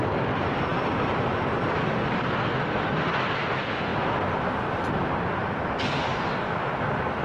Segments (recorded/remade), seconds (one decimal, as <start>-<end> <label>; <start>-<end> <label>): 0.0-7.2 recorded